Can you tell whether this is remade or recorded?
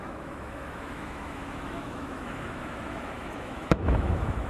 remade